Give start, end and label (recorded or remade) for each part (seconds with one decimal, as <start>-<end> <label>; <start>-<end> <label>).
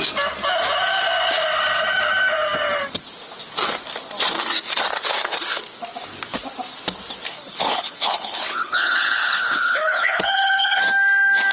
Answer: 0.0-7.5 recorded; 7.5-10.8 remade; 10.8-11.5 recorded